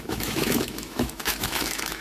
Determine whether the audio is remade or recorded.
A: remade